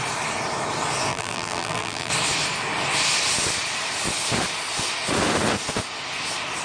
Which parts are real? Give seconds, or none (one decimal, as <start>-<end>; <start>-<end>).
0.0-1.1; 2.1-6.6